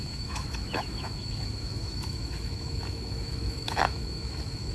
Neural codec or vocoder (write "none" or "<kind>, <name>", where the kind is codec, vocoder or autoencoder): autoencoder, DAC-VAE